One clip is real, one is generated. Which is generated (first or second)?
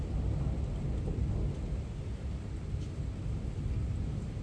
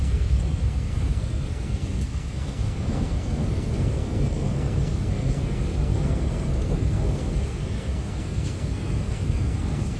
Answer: second